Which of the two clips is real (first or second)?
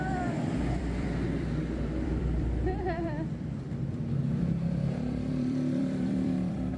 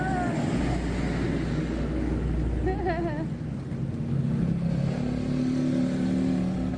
second